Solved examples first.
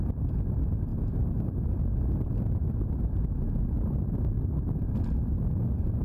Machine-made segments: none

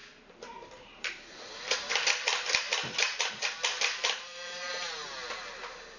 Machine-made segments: 0.0-1.9 (vocoder, BigVGAN v2); 2.8-4.9

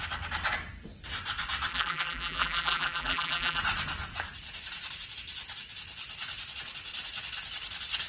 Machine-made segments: 1.7-3.6 (vocoder, BigVGAN v2)

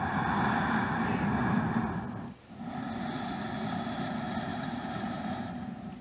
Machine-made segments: 4.5-6.0 (vocoder, BigVGAN v2)

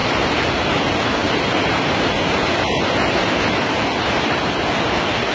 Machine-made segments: 0.0-0.5 (vocoder, BigVGAN v2); 1.2-4.4

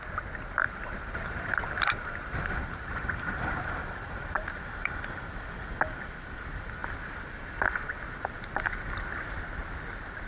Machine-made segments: 0.6-5.0 (vocoder, BigVGAN v2)

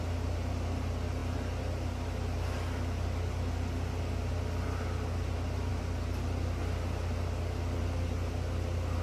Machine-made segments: none